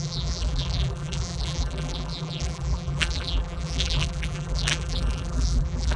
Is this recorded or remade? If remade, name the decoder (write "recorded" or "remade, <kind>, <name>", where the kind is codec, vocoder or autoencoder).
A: remade, vocoder, BigVGAN v2